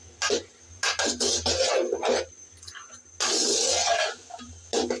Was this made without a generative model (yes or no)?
yes